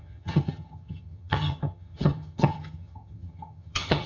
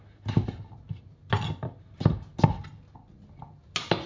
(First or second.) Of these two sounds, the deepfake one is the first